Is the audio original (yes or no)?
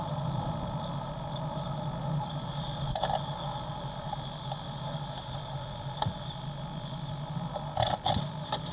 yes